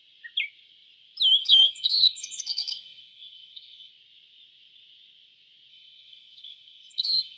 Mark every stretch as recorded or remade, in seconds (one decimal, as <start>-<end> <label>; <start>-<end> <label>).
0.0-1.4 recorded; 1.4-3.9 remade; 3.9-5.7 recorded; 5.7-7.4 remade